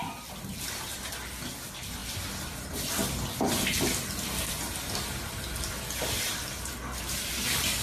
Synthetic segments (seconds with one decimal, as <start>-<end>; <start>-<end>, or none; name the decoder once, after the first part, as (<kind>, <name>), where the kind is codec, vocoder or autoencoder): none